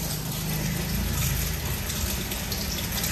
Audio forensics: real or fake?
real